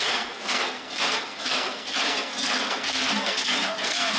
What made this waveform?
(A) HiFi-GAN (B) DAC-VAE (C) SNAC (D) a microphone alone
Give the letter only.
C